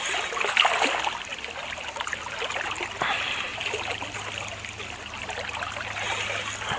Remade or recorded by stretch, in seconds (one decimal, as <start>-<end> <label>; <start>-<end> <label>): 0.0-6.8 recorded